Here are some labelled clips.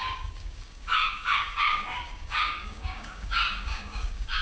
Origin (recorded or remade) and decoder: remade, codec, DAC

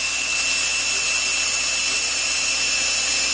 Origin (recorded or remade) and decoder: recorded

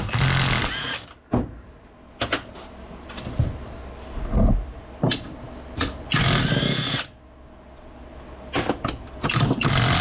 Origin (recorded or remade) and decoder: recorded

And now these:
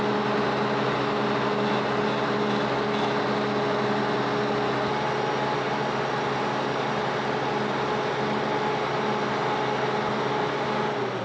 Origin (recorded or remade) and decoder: recorded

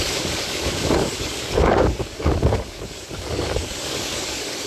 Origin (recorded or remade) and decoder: remade, codec, DAC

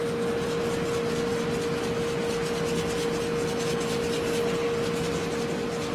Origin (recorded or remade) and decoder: recorded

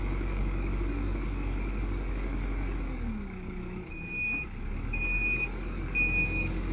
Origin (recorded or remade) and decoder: remade, codec, DAC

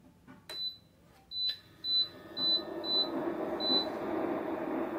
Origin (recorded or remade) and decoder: recorded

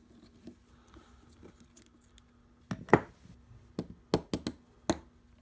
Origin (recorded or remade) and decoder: recorded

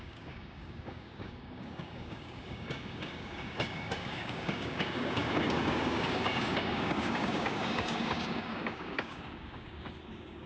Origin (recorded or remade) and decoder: remade, codec, DAC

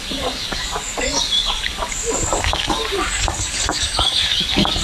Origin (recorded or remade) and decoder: remade, codec, DAC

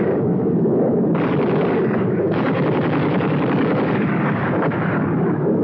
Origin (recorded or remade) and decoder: remade, codec, DAC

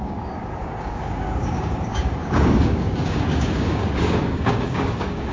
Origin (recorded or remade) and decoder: remade, codec, DAC